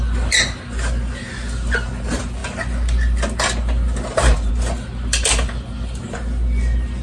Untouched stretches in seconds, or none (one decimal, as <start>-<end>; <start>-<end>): 0.0-7.0